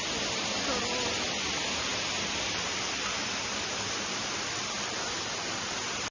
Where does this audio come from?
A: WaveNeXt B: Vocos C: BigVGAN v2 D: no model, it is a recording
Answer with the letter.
D